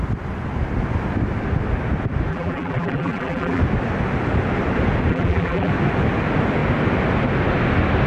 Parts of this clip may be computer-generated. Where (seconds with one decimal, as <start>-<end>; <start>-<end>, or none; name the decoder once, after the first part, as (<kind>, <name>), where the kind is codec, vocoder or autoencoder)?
2.3-3.6 (vocoder, BigVGAN v2); 5.1-5.7